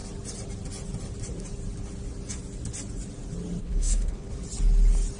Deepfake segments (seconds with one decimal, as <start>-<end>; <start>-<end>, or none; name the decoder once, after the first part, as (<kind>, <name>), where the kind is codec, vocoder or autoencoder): 3.6-4.3 (codec, HILCodec)